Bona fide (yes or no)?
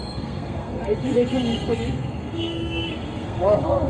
no